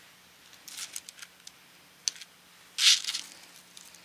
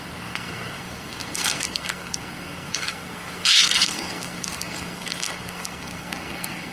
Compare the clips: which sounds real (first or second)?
first